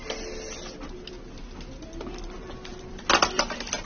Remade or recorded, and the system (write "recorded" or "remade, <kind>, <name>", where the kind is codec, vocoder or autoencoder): recorded